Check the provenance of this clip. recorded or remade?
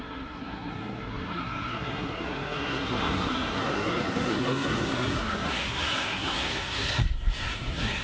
remade